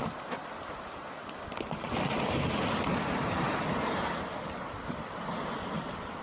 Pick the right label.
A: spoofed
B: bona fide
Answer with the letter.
B